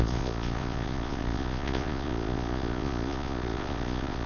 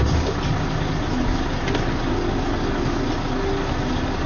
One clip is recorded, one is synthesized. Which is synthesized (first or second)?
first